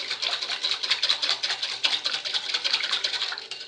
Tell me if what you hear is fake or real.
real